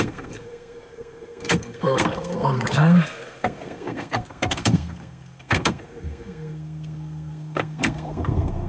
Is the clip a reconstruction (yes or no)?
yes